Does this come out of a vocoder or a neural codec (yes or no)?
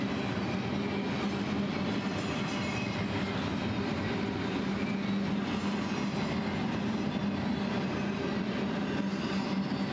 no